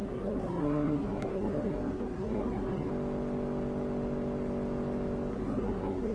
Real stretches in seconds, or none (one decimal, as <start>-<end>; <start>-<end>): 2.9-5.3